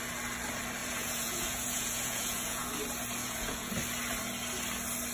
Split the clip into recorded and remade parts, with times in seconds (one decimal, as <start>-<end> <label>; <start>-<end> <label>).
0.0-0.8 recorded; 0.8-2.7 remade; 2.7-3.2 recorded; 3.2-3.7 remade; 3.7-5.1 recorded